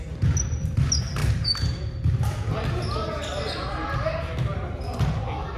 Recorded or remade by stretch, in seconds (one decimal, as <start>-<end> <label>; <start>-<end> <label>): 0.0-5.6 recorded